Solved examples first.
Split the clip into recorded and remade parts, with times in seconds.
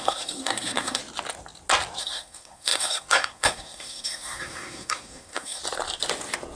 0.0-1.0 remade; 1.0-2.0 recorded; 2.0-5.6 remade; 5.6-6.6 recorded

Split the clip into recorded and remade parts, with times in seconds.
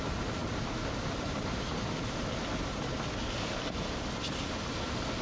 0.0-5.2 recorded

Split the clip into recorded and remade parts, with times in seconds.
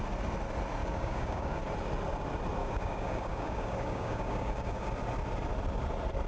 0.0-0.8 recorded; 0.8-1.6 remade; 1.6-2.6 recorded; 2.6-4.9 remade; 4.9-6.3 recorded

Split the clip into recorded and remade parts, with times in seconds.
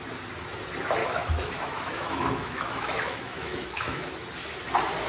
0.0-1.0 recorded; 1.0-4.1 remade; 4.1-5.1 recorded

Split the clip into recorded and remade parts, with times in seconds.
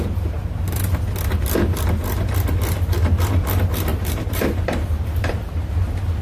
0.0-3.9 recorded; 3.9-5.3 remade; 5.3-6.2 recorded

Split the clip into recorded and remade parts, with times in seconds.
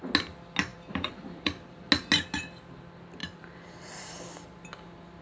0.0-0.7 recorded; 0.7-1.9 remade; 1.9-3.2 recorded; 3.2-4.2 remade; 4.2-5.2 recorded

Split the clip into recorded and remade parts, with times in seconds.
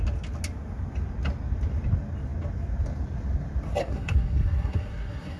0.0-3.8 recorded; 3.8-5.4 remade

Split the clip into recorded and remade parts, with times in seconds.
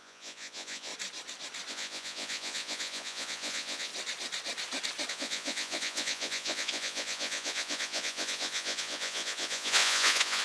0.0-0.9 remade; 0.9-1.7 recorded; 1.7-3.9 remade; 3.9-5.1 recorded; 5.1-10.4 remade